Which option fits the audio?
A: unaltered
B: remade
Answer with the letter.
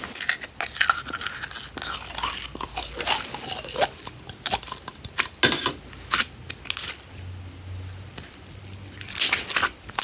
A